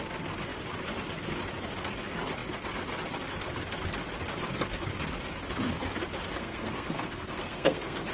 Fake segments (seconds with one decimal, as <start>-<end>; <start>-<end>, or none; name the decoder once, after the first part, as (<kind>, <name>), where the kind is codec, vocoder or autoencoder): 6.4-8.1 (codec, SNAC)